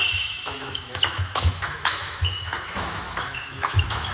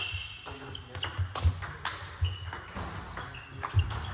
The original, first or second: second